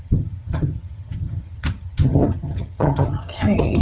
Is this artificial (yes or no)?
yes